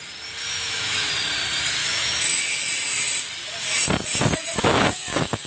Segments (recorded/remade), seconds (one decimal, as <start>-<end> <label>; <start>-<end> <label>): 0.0-0.4 recorded; 0.4-1.1 remade; 1.1-1.8 recorded; 1.8-2.4 remade; 2.4-4.6 recorded; 4.6-5.5 remade